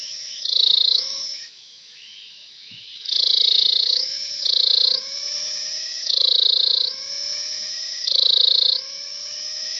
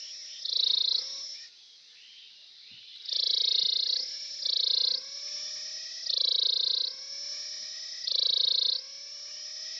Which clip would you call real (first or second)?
second